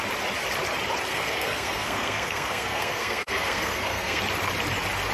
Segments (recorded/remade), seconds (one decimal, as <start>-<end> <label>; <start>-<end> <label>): 0.0-1.1 recorded; 1.1-4.2 remade; 4.2-5.1 recorded